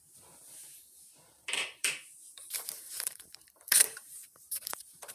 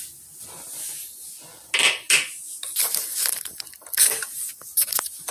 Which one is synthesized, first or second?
first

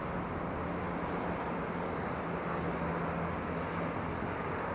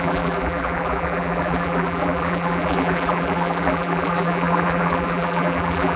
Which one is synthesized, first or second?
second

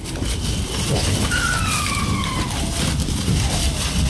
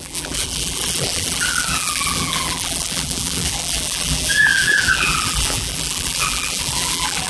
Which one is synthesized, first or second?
second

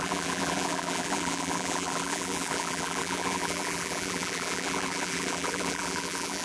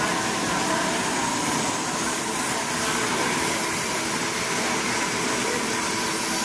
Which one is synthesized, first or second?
first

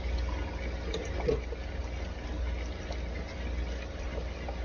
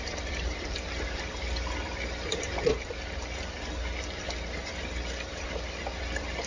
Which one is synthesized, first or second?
second